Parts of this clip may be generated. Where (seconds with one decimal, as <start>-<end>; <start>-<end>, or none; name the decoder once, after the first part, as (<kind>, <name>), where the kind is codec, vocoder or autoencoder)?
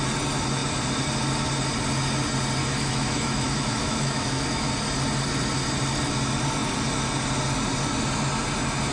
2.6-4.7 (autoencoder, DAC-VAE)